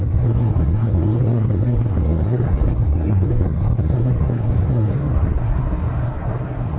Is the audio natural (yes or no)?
no